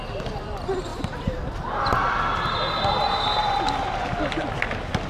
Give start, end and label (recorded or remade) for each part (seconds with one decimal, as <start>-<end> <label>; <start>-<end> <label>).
0.0-5.1 recorded